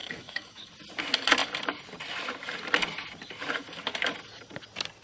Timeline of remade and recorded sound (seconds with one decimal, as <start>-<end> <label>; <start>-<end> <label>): 0.0-0.7 remade; 0.7-5.0 recorded